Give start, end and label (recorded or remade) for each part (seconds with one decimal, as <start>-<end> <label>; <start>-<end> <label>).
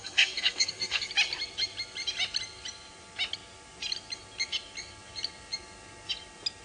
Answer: 0.0-1.1 remade; 1.1-6.6 recorded